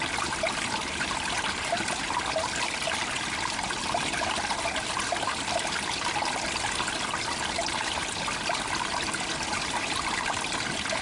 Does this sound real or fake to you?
real